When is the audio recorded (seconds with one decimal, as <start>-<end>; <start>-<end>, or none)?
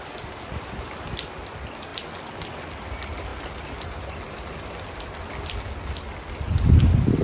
0.0-7.2